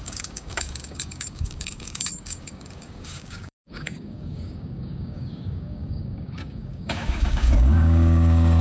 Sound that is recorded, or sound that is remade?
remade